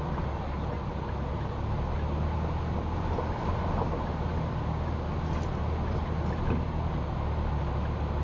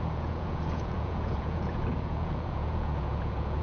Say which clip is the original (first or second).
first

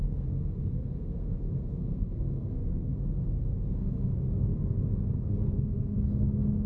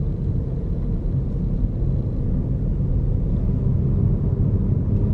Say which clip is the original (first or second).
second